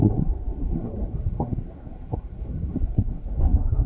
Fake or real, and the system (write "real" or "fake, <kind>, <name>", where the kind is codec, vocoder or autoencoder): fake, codec, SNAC